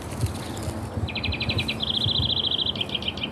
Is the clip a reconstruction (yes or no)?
no